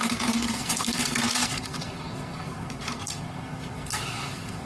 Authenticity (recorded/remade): remade